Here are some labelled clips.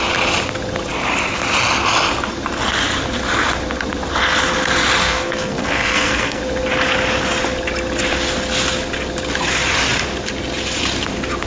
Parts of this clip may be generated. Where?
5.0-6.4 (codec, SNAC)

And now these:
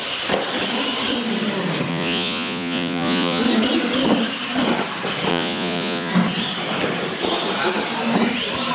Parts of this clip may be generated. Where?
1.9-3.4 (vocoder, Vocos); 5.3-6.1

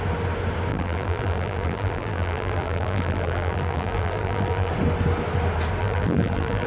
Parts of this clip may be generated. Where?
0.7-4.7 (vocoder, BigVGAN v2); 5.8-6.7

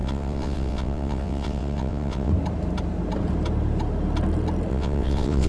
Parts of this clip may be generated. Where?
0.0-2.3 (vocoder, WaveNeXt); 4.7-5.5

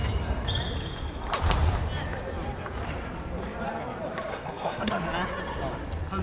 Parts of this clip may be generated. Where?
4.3-4.9 (codec, SNAC)

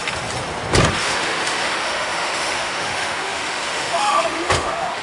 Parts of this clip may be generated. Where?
1.0-5.0 (autoencoder, DAC-VAE)

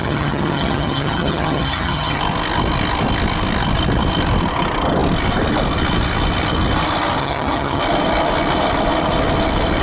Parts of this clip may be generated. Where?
0.0-2.2 (vocoder, HiFi-GAN); 7.2-7.8